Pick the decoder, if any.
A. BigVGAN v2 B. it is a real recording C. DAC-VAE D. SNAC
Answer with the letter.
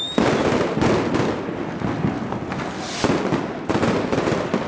B